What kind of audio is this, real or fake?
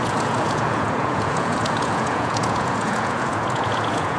fake